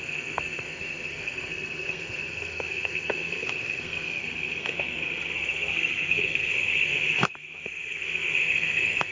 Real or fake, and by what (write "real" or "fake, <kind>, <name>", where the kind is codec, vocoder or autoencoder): fake, codec, SNAC